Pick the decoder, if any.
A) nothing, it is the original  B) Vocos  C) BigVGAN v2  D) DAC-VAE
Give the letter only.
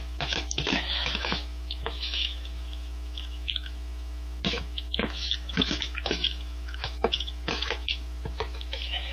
D